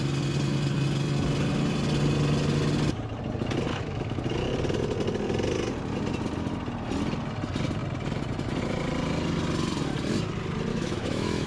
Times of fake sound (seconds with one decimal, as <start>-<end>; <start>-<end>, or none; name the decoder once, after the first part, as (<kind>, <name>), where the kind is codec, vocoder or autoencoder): 3.7-4.2 (autoencoder, DAC-VAE); 10.7-11.5